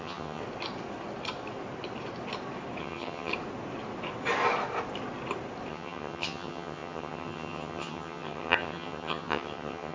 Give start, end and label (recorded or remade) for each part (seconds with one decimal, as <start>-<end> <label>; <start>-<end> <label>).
0.0-0.4 remade; 0.4-2.8 recorded; 2.8-3.3 remade; 3.3-5.7 recorded; 5.7-9.9 remade